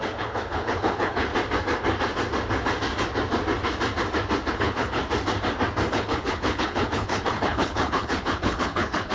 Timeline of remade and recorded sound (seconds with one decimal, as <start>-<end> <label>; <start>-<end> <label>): 0.0-1.3 remade; 1.3-4.5 recorded; 4.5-5.0 remade; 5.0-5.9 recorded; 5.9-9.1 remade